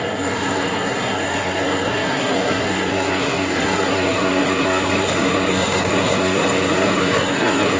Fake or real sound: fake